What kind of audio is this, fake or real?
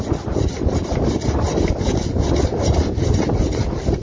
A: real